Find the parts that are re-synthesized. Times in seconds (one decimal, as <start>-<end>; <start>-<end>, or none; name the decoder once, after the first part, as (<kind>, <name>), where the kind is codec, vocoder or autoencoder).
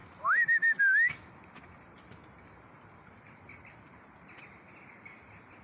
0.0-1.1 (vocoder, BigVGAN v2)